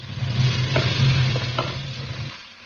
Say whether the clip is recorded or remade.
recorded